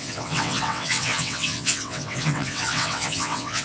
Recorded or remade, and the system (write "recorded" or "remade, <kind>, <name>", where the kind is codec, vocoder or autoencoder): remade, vocoder, WaveNeXt